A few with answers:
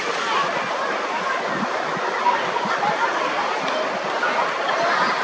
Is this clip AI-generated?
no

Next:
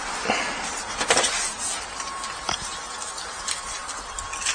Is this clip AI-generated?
no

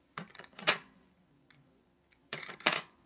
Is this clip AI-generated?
yes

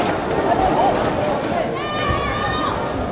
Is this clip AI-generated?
no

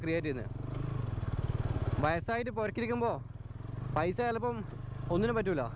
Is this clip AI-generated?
no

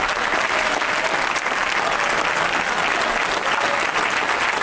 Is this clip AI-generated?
no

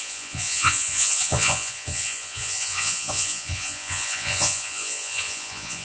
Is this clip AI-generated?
yes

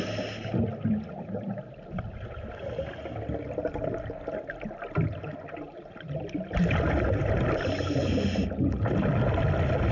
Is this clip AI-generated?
no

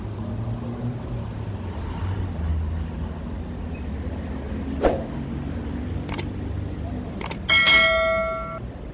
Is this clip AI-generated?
no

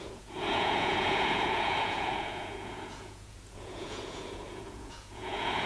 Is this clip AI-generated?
yes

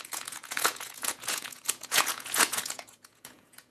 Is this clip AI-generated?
yes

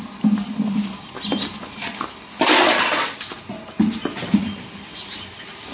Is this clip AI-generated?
no